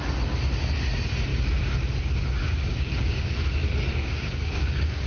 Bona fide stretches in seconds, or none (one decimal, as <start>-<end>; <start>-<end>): 0.0-2.4; 3.3-3.9